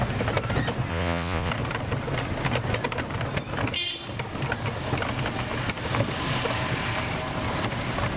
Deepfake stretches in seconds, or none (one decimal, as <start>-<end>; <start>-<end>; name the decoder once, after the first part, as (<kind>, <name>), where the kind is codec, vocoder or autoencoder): 0.9-1.5 (vocoder, Vocos)